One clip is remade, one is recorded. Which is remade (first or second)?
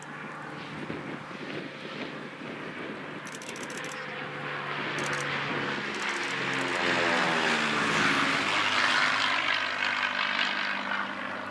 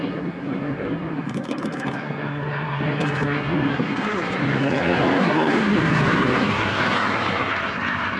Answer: second